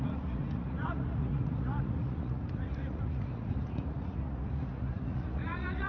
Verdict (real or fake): fake